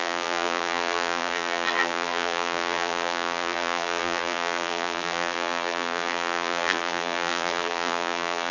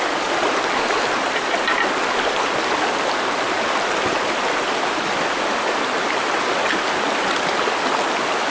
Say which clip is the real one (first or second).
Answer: second